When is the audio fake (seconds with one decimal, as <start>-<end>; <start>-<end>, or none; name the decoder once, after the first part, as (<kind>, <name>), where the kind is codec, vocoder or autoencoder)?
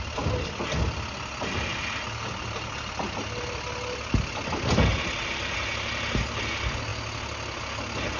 none